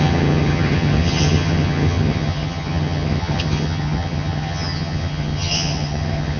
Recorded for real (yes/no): no